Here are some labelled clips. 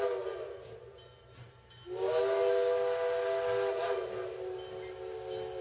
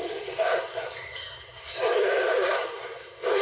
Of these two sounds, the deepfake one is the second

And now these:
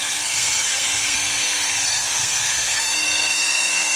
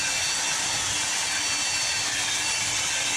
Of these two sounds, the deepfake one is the first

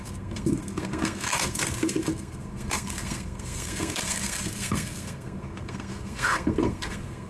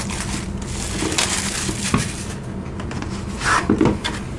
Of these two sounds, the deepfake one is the first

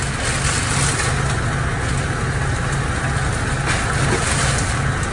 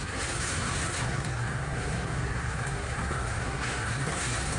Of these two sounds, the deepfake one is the second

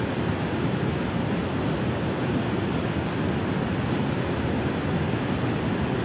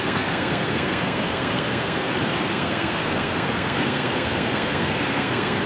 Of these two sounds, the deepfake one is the second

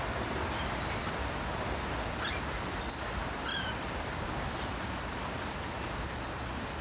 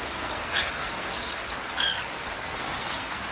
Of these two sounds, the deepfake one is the second